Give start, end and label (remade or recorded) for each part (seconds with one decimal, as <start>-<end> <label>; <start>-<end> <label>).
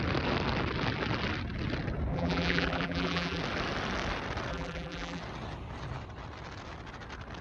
0.0-2.1 recorded; 2.1-3.4 remade; 3.4-4.5 recorded; 4.5-5.2 remade; 5.2-7.4 recorded